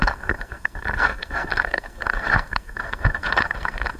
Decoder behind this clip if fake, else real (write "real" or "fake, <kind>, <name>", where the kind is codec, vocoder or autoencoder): fake, codec, SNAC